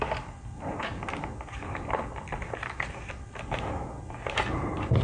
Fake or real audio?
real